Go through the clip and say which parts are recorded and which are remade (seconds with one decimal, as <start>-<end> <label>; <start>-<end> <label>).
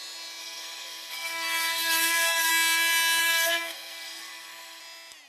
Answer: 0.0-0.4 recorded; 0.4-2.5 remade; 2.5-3.2 recorded; 3.2-4.8 remade; 4.8-5.3 recorded